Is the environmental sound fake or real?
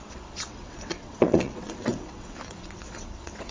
fake